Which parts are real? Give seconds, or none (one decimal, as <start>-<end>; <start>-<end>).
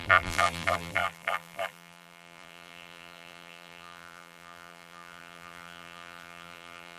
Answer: none